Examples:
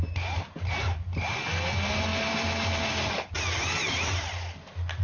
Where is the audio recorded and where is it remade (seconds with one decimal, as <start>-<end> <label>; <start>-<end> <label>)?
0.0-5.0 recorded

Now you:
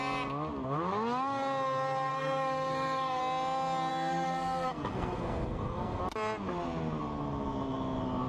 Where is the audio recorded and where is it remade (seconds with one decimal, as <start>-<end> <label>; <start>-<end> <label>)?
0.0-2.1 recorded; 2.1-3.2 remade; 3.2-3.9 recorded; 3.9-6.0 remade; 6.0-8.3 recorded

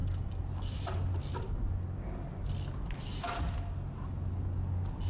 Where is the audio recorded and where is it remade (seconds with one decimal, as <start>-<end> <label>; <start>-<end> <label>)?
0.0-5.1 recorded

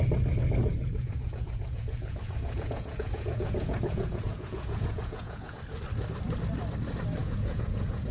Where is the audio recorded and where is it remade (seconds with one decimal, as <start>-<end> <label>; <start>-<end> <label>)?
0.0-0.8 recorded; 0.8-5.6 remade; 5.6-7.2 recorded; 7.2-8.1 remade

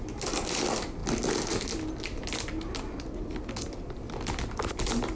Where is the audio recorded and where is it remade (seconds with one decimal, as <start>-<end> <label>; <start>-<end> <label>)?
0.0-5.2 recorded

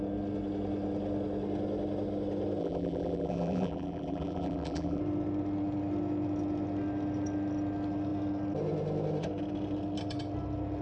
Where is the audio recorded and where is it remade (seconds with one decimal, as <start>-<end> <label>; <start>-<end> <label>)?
0.0-2.6 recorded; 2.6-5.0 remade; 5.0-10.8 recorded